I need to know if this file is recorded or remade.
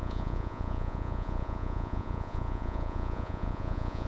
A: remade